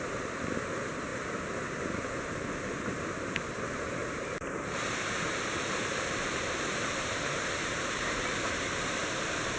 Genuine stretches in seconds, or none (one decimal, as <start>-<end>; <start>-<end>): none